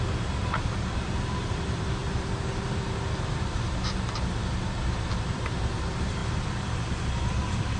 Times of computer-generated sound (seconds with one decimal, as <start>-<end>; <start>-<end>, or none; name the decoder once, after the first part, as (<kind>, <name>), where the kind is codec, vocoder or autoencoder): 0.0-6.2 (vocoder, BigVGAN v2)

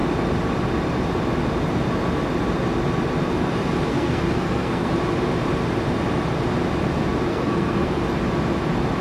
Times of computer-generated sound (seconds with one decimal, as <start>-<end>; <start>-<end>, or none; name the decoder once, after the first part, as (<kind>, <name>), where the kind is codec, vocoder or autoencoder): 3.9-4.9 (codec, SNAC); 7.3-8.0

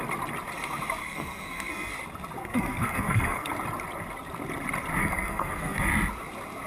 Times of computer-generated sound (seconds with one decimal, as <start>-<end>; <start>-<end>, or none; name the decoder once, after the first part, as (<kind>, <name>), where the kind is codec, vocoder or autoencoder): 1.0-1.9 (codec, SNAC); 2.4-3.5; 5.0-5.9